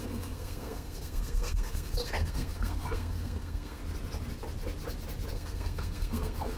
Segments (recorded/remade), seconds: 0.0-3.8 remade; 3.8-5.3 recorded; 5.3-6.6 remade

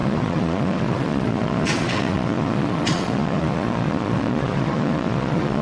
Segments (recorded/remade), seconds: 0.0-5.6 remade